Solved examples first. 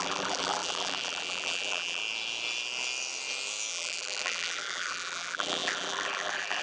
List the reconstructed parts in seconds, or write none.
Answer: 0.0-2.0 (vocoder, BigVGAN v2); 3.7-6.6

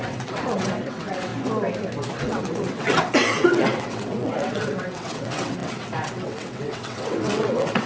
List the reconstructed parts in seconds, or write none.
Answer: 0.0-1.3 (vocoder, WaveNeXt); 2.2-7.9